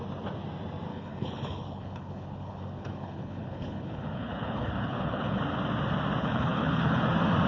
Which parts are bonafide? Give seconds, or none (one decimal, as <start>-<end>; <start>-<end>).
0.0-0.9; 5.4-6.2; 7.0-7.5

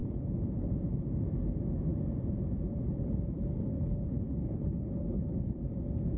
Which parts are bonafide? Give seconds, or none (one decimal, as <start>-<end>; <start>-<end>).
0.7-3.7; 5.6-6.2

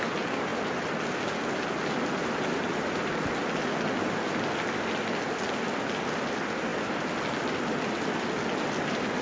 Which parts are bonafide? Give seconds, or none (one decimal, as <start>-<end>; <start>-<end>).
0.0-9.2

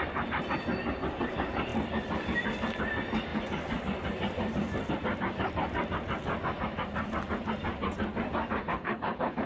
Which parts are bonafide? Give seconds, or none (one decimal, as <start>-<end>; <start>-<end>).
0.0-8.6

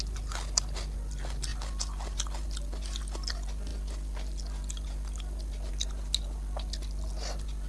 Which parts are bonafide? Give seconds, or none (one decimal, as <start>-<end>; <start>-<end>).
0.0-7.7